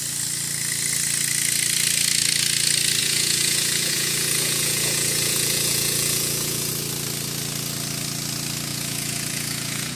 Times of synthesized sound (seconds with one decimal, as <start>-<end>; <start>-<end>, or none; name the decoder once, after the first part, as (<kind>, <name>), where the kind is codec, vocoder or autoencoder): 3.0-6.7 (vocoder, Vocos); 8.7-10.0